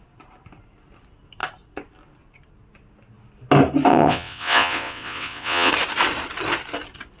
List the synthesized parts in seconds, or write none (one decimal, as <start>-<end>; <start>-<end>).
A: 3.9-5.7